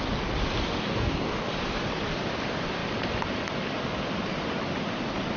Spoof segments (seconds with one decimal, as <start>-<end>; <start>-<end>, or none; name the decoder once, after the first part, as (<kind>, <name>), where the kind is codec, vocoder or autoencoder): 0.8-1.5 (codec, DAC)